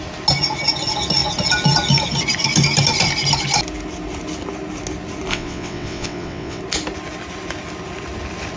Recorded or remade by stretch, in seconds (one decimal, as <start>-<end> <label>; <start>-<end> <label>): 0.0-5.3 recorded; 5.3-6.6 remade; 6.6-8.6 recorded